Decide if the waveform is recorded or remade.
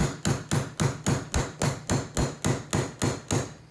recorded